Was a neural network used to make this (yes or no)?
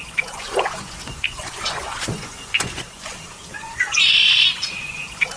yes